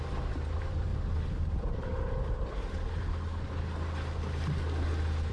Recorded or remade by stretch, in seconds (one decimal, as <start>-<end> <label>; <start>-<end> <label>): 0.0-0.9 remade; 0.9-1.5 recorded; 1.5-1.9 remade; 1.9-5.3 recorded